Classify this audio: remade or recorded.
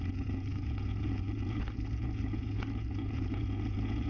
remade